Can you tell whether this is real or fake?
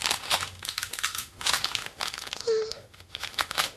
fake